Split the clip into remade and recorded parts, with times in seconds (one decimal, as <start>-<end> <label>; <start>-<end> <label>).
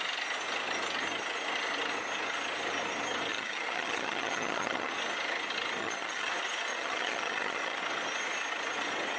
0.0-3.3 recorded; 3.3-4.9 remade; 4.9-5.8 recorded; 5.8-6.3 remade; 6.3-6.7 recorded; 6.7-7.8 remade; 7.8-9.2 recorded